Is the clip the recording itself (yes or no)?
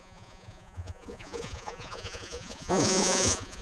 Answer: no